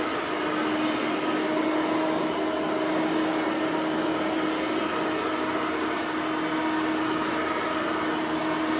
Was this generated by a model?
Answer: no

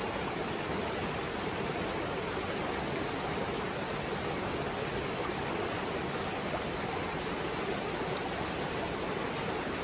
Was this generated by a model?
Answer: no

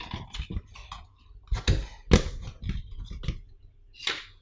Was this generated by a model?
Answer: no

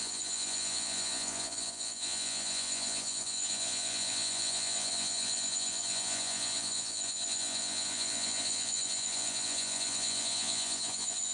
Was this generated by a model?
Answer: yes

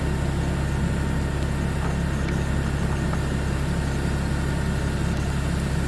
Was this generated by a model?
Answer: no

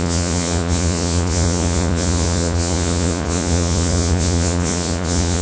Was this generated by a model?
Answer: yes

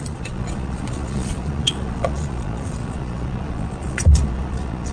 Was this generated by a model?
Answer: yes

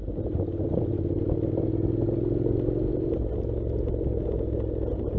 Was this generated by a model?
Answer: no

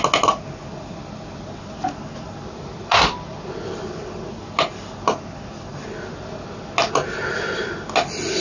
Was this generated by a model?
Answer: no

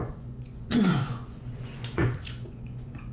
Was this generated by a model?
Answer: yes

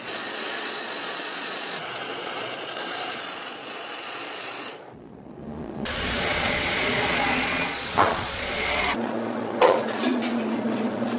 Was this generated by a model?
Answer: yes